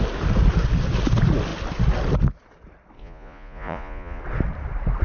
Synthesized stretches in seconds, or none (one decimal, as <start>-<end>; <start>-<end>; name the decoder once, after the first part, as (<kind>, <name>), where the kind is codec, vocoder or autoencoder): 3.0-4.2 (vocoder, Vocos)